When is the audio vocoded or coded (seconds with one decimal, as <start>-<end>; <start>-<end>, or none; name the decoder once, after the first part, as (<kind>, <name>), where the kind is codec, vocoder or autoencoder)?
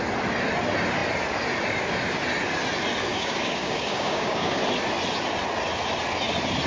3.1-4.6 (codec, DAC)